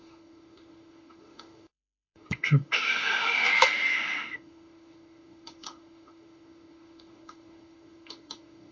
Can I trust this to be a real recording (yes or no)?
no